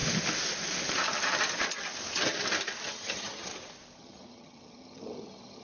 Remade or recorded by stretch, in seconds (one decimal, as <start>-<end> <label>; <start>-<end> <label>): 0.0-2.9 recorded; 2.9-3.5 remade; 3.5-4.0 recorded; 4.0-5.6 remade